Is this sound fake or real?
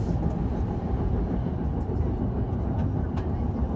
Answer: real